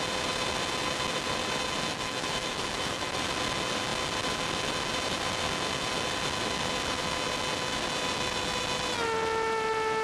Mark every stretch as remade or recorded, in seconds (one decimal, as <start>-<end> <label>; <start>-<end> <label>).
0.0-1.9 recorded; 1.9-3.1 remade; 3.1-10.0 recorded